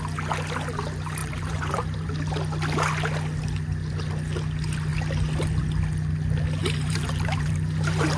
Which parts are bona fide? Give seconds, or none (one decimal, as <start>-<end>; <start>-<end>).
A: 0.0-1.2; 2.1-6.6